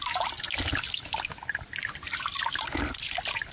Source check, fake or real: real